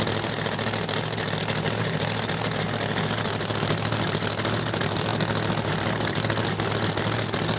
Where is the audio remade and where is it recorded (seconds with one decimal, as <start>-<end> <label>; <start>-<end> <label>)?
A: 0.0-7.6 recorded